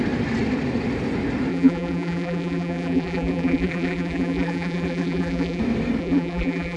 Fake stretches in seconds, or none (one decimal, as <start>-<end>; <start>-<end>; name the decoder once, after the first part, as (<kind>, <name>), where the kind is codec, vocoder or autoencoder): 1.5-5.6 (vocoder, BigVGAN v2); 6.0-6.8